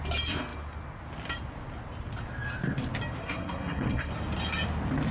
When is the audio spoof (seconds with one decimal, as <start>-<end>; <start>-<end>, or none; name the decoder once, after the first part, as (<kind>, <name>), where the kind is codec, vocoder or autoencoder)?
3.2-4.1 (codec, SNAC)